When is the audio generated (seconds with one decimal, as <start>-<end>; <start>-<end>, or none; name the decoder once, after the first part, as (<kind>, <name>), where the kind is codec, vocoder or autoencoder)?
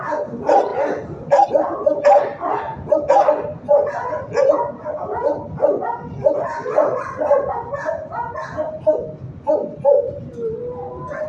none